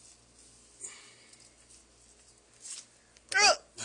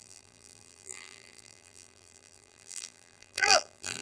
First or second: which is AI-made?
second